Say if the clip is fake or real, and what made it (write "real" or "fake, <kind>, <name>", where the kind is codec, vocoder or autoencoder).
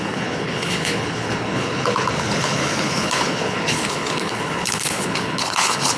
fake, codec, HILCodec